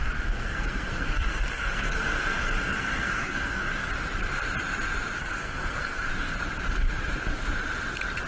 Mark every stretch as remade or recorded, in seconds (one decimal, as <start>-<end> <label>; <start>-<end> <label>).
0.0-3.7 remade; 3.7-5.2 recorded; 5.2-6.1 remade; 6.1-8.3 recorded